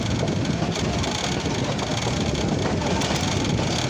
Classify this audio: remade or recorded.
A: recorded